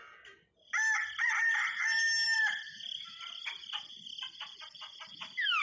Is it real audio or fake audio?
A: real